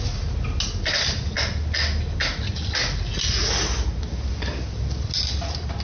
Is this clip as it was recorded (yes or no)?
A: yes